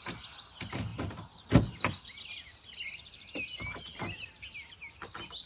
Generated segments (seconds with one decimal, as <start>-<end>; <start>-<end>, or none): none